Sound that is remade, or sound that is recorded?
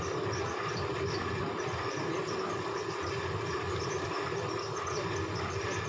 recorded